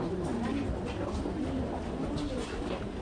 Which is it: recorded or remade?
recorded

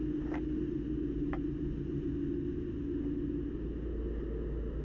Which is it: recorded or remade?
recorded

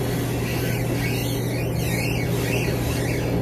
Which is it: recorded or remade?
recorded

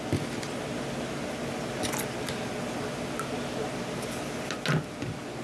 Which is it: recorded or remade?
recorded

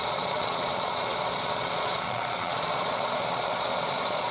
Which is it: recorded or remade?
remade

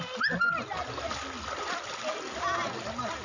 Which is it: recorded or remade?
recorded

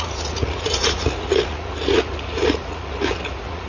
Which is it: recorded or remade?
remade